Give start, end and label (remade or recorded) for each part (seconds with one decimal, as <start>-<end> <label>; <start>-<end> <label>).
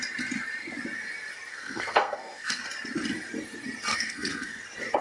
0.0-1.5 recorded; 1.5-2.6 remade; 2.6-3.9 recorded; 3.9-4.6 remade; 4.6-5.0 recorded